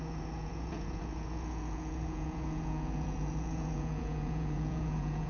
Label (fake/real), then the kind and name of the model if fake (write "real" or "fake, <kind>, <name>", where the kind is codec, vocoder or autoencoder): fake, vocoder, Vocos